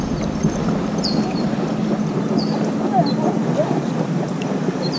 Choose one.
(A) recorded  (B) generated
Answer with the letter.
A